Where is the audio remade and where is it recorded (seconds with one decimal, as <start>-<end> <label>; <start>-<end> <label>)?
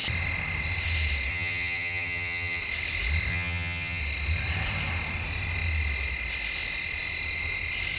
0.0-1.3 recorded; 1.3-2.6 remade; 2.6-3.3 recorded; 3.3-4.0 remade; 4.0-8.0 recorded